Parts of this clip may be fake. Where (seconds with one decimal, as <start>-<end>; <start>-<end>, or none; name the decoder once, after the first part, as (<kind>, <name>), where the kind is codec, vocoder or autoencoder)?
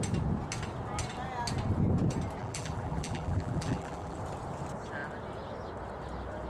2.4-4.2 (vocoder, BigVGAN v2)